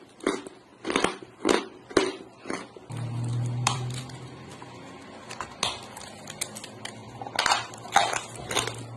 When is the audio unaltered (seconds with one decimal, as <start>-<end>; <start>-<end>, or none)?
0.0-0.7; 1.6-3.3; 4.0-4.5; 5.0-9.0